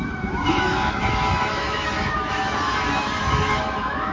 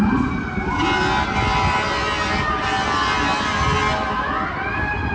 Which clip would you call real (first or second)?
second